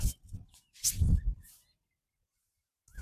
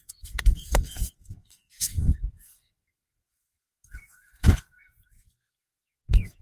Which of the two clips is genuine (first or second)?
first